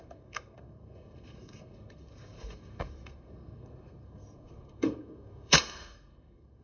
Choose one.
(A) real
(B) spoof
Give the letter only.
B